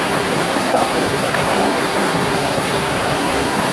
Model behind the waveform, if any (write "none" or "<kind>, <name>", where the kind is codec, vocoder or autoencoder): codec, SNAC